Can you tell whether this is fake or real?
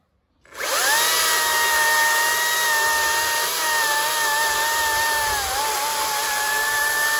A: real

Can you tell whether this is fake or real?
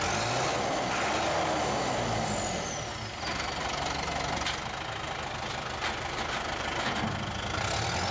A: real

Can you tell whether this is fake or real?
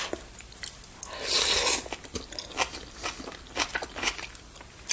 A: real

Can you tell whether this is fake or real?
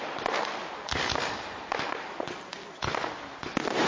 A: real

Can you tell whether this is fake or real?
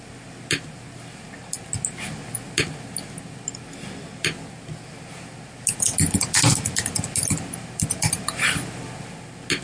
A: real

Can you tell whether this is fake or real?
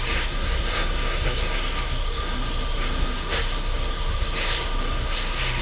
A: fake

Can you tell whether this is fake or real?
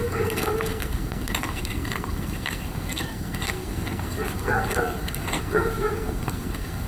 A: fake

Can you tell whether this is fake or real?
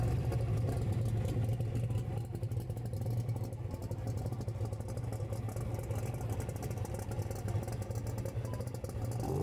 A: real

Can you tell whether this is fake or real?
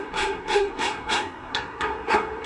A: fake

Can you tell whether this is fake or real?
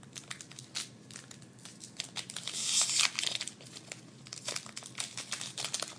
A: real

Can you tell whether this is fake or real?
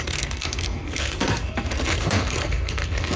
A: fake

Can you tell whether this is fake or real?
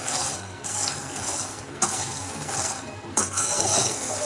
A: fake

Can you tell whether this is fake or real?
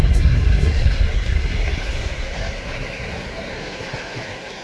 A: fake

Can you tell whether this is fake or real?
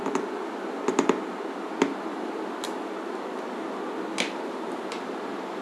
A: real